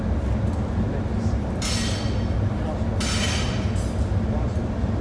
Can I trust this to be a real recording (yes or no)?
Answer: yes